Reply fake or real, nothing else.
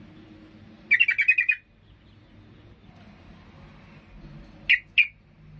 real